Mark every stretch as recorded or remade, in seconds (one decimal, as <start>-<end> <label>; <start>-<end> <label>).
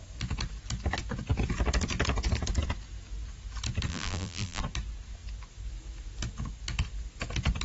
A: 0.0-3.9 recorded; 3.9-4.6 remade; 4.6-7.6 recorded